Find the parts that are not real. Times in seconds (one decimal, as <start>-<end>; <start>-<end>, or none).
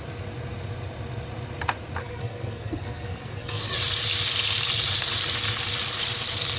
2.0-3.6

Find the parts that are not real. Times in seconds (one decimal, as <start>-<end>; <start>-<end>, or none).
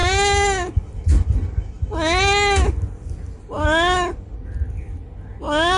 none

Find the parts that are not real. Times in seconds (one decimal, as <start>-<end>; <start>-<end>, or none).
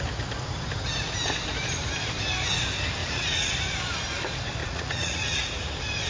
3.0-3.5; 4.6-5.5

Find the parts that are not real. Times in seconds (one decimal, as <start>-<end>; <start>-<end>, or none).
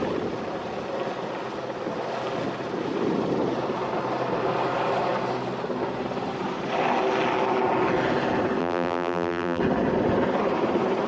8.6-9.6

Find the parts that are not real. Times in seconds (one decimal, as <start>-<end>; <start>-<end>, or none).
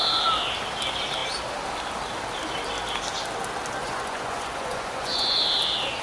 3.8-5.4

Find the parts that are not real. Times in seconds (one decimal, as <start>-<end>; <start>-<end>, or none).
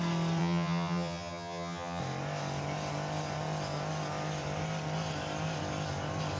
0.4-2.0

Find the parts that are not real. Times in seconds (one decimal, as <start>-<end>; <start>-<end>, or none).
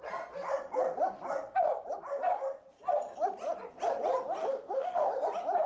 4.4-5.1